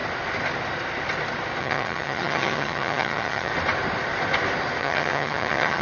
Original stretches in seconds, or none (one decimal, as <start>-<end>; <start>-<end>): 0.0-1.6; 3.5-4.8